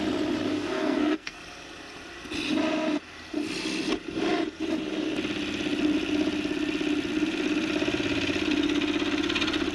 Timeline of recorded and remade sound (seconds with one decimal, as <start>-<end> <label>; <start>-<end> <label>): 0.0-0.5 recorded; 0.5-1.4 remade; 1.4-9.7 recorded